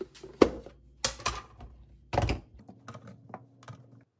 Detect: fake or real real